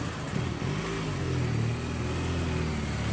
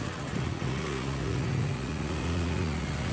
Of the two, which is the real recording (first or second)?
first